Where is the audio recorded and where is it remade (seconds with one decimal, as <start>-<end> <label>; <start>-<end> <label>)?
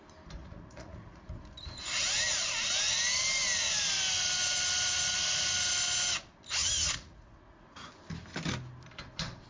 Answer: 0.0-0.4 recorded; 0.4-1.2 remade; 1.2-6.6 recorded; 6.6-7.9 remade; 7.9-9.5 recorded